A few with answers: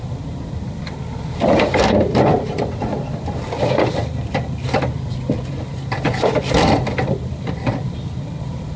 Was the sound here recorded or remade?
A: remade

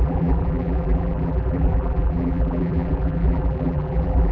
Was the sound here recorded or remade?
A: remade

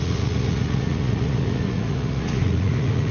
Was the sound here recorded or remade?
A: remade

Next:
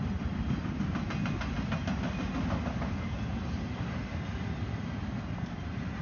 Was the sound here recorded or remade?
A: recorded